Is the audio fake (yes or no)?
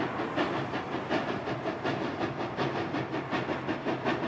no